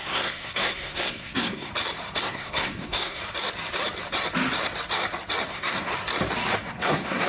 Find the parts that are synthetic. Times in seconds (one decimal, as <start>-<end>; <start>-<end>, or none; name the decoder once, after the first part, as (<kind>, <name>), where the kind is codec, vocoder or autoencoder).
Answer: 0.0-1.7 (codec, SNAC); 2.2-3.2; 5.5-5.9; 6.6-7.3